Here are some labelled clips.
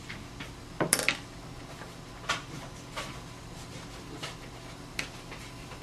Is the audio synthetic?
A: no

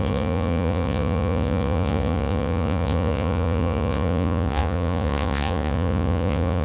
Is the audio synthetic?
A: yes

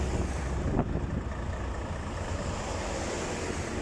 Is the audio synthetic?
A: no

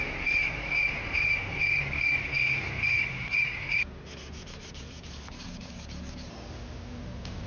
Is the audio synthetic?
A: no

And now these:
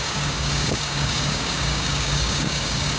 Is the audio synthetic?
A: yes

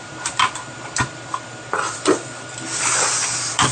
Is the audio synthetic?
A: yes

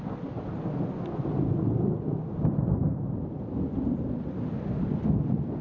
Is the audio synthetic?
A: no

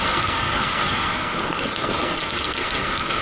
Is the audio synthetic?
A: yes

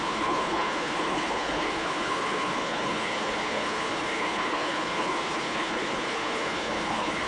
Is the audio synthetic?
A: yes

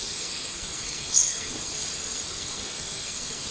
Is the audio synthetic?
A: yes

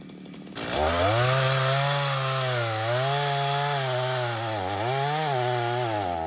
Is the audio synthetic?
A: no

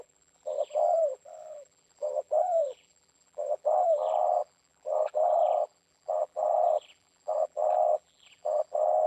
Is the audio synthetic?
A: yes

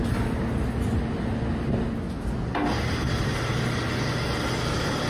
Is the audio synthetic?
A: no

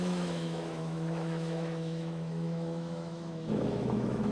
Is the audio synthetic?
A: yes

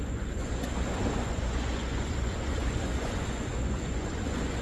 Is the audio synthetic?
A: yes